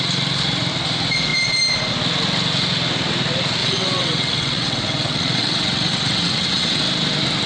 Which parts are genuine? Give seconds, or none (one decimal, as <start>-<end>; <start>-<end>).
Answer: 0.0-3.6; 6.8-7.5